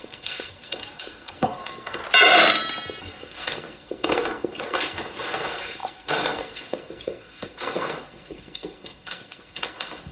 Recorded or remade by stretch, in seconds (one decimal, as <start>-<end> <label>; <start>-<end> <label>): 0.0-2.0 remade; 2.0-3.0 recorded; 3.0-10.1 remade

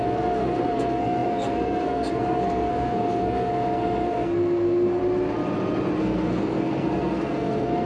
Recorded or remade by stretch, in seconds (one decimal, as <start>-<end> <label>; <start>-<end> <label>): 0.0-5.0 remade; 5.0-6.0 recorded; 6.0-7.9 remade

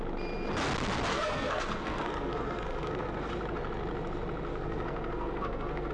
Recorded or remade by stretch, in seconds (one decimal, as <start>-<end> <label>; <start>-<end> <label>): 0.0-1.1 recorded; 1.1-3.3 remade; 3.3-4.5 recorded; 4.5-5.9 remade

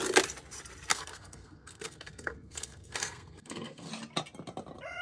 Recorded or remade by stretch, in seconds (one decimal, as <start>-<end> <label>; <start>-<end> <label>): 0.0-0.9 recorded; 0.9-3.9 remade; 3.9-5.0 recorded